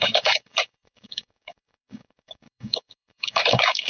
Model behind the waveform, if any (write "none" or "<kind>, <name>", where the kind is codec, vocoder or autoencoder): codec, DAC